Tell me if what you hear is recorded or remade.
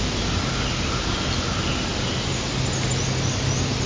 recorded